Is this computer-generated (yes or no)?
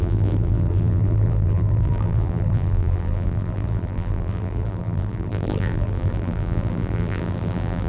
yes